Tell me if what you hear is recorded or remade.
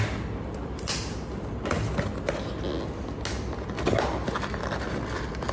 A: recorded